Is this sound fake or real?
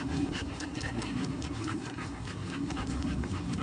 fake